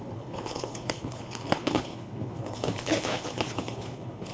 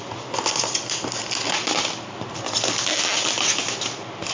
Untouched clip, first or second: second